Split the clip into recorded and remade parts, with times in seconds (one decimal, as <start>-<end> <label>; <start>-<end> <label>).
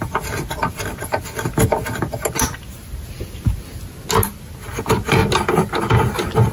0.0-6.5 recorded